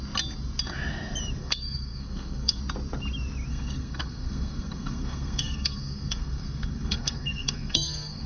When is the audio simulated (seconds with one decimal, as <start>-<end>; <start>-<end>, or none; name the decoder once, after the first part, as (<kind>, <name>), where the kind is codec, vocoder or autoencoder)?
1.4-2.6 (codec, SNAC); 3.5-8.3